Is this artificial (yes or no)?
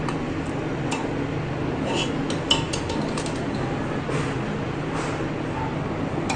no